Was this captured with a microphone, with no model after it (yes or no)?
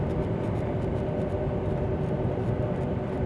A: yes